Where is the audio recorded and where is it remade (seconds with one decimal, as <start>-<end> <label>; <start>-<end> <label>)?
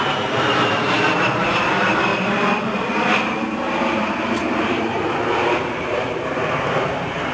0.0-7.3 remade